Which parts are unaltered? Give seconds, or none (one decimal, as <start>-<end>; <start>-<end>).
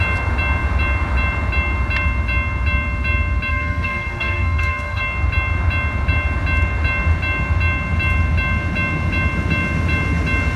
0.0-3.5; 5.0-10.6